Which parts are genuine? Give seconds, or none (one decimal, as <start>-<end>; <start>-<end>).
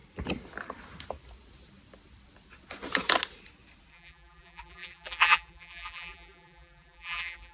0.0-3.9